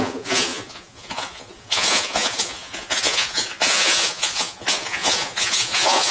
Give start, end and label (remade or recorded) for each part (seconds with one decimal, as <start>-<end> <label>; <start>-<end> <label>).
0.0-6.1 remade